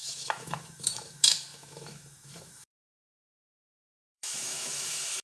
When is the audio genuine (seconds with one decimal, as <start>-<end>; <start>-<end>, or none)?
none